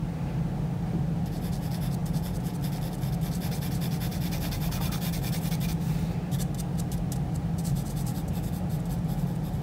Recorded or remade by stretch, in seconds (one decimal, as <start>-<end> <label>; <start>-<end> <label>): 0.0-9.6 recorded